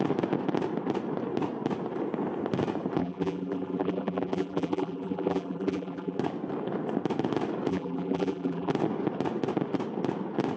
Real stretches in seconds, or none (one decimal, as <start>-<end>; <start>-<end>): 0.0-3.0; 6.2-7.7; 8.7-10.6